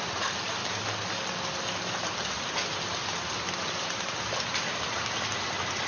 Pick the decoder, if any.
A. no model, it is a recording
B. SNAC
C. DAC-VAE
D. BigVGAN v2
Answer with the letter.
A